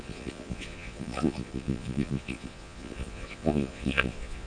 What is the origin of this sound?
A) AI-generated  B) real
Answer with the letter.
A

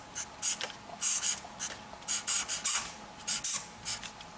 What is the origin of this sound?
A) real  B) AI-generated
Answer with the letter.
A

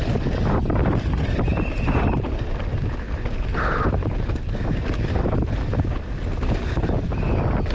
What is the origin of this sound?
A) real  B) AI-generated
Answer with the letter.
A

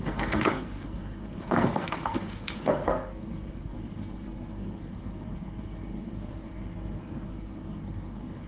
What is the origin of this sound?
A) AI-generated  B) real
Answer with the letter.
A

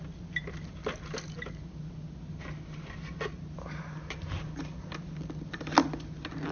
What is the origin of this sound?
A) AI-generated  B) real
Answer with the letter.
B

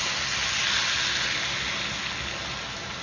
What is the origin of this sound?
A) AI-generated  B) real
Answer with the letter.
B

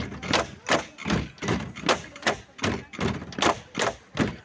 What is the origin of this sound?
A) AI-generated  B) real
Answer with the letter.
B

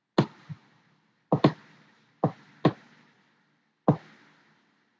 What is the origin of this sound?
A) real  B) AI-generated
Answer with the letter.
A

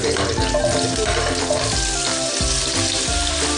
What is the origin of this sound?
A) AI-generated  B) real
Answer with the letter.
B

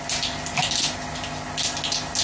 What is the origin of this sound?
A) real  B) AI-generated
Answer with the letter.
A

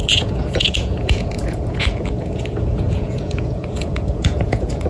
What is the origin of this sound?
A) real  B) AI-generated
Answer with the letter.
B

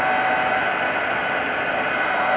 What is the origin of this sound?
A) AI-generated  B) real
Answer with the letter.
B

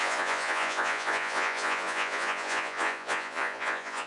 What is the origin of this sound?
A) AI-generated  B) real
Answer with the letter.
A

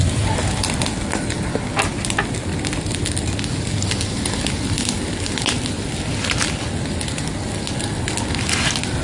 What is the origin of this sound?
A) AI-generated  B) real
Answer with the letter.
B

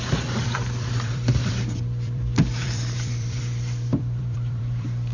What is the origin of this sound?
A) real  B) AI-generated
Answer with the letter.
B